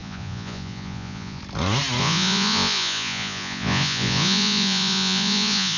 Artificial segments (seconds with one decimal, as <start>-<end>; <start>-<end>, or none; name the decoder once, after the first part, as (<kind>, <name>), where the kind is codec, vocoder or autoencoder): 0.0-1.4 (vocoder, Vocos); 2.0-5.8